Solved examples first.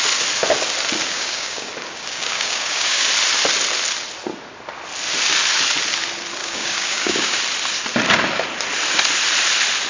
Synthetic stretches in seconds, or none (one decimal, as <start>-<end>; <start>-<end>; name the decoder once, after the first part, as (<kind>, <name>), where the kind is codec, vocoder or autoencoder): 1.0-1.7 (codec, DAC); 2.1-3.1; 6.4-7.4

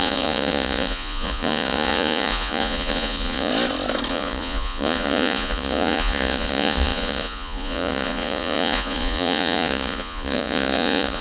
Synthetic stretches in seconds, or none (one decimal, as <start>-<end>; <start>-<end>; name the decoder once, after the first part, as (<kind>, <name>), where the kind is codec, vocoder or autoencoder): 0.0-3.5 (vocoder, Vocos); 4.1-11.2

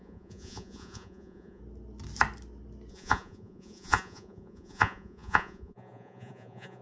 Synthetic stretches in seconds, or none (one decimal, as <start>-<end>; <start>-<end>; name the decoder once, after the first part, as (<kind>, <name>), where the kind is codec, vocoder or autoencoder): 0.0-1.6 (vocoder, Vocos); 2.9-6.8

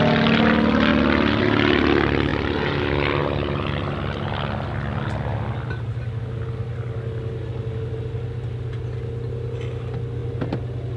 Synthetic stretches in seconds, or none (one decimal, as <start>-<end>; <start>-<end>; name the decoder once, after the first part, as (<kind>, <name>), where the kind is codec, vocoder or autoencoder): none

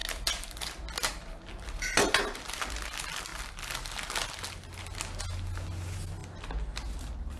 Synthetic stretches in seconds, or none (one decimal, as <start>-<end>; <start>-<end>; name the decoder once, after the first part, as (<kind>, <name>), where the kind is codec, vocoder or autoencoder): none

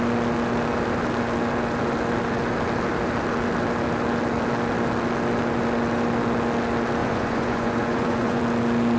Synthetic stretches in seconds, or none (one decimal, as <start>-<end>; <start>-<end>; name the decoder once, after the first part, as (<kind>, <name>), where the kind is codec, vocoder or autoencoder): 7.0-8.4 (vocoder, Vocos)

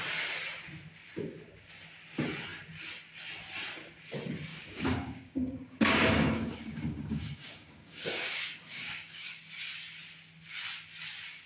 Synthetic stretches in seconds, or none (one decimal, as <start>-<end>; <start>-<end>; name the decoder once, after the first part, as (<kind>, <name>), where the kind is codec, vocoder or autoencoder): 4.5-9.3 (codec, DAC)

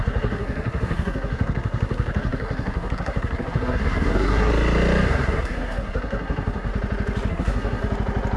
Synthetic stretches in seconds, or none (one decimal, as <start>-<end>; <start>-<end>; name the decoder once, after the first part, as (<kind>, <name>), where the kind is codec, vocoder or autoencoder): 0.0-4.5 (codec, SNAC); 5.1-6.7; 7.3-7.8